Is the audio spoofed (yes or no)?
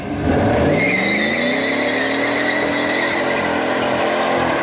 no